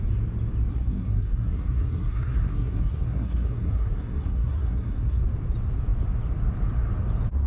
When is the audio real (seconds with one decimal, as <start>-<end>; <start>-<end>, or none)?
0.0-0.7; 5.2-7.5